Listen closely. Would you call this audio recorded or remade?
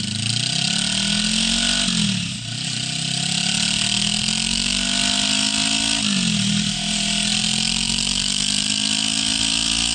recorded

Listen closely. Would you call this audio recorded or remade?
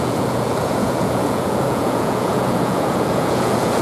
remade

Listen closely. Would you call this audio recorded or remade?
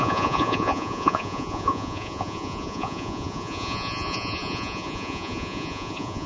remade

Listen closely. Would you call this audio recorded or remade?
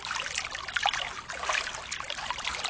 recorded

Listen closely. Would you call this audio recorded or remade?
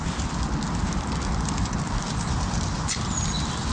recorded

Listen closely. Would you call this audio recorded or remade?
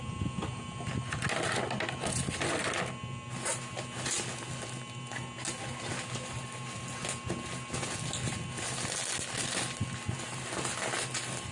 recorded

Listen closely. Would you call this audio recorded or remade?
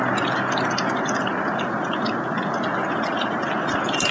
recorded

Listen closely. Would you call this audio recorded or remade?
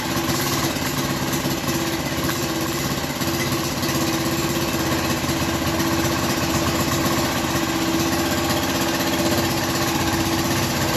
recorded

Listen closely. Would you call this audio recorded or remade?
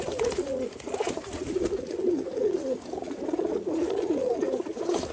remade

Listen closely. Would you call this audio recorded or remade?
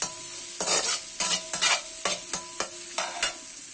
recorded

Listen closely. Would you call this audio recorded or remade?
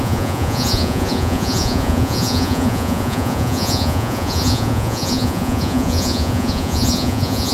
remade